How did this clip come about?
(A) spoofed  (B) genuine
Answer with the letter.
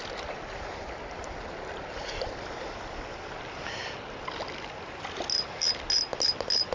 B